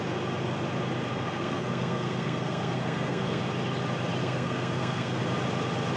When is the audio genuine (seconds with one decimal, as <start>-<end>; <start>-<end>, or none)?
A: 0.0-1.1; 3.4-4.2; 5.2-6.0